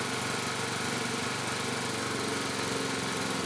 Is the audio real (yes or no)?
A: yes